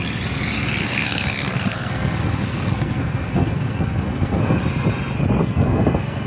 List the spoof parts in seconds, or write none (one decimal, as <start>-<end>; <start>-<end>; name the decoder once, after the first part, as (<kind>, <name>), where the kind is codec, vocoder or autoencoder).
0.8-4.6 (codec, SNAC); 5.4-6.3